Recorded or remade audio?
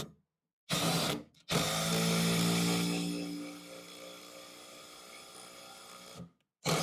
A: recorded